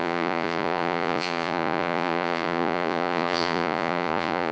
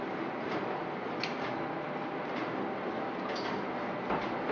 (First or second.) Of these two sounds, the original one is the second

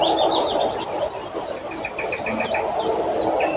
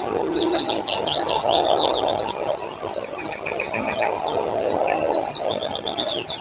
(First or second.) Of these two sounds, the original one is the first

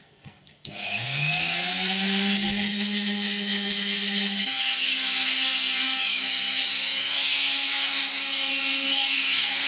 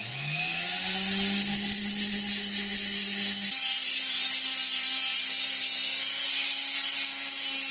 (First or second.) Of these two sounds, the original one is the second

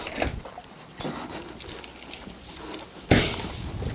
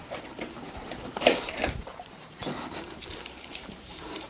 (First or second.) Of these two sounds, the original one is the first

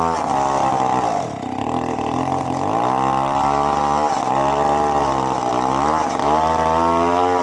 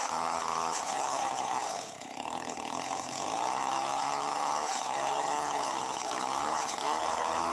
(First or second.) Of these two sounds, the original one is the first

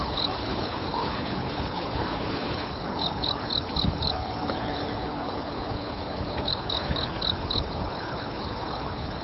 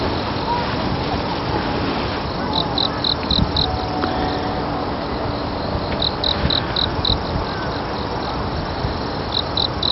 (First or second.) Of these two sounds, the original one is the second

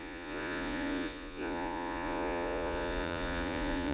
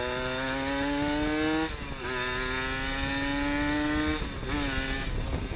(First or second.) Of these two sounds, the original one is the second